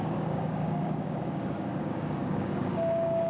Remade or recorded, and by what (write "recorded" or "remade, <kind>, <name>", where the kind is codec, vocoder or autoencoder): remade, codec, DAC